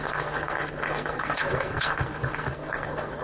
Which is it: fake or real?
fake